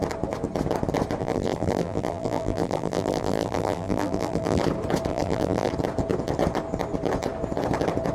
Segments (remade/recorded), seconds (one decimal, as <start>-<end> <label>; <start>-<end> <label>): 0.0-1.2 recorded; 1.2-4.6 remade; 4.6-5.1 recorded; 5.1-5.7 remade; 5.7-8.1 recorded